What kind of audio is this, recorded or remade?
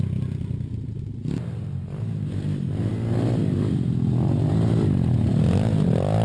recorded